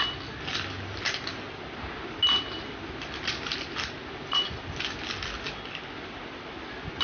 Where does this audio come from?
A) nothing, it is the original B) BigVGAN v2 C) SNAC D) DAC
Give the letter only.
A